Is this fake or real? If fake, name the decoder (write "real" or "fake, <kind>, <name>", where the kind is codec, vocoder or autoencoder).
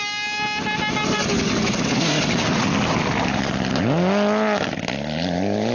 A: real